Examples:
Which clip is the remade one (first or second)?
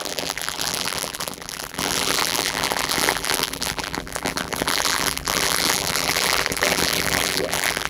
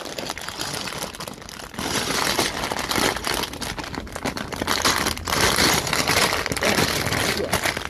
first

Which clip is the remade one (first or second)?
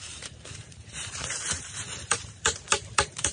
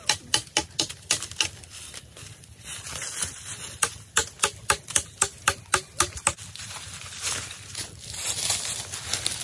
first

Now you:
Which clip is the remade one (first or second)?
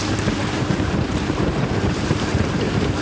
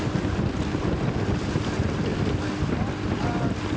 first